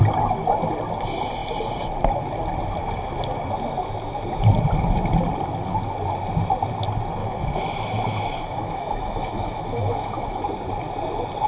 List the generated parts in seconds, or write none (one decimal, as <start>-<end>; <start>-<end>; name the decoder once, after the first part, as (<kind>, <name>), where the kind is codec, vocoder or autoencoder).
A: 7.2-10.4 (autoencoder, DAC-VAE)